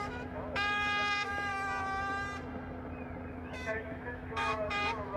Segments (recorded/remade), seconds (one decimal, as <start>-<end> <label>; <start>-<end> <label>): 0.0-1.5 remade; 1.5-3.3 recorded; 3.3-5.2 remade